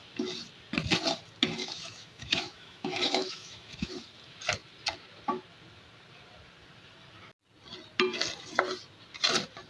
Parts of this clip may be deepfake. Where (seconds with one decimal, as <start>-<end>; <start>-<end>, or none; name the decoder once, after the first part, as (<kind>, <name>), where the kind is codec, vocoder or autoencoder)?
1.6-3.9 (autoencoder, DAC-VAE)